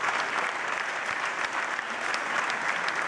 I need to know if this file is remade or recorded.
recorded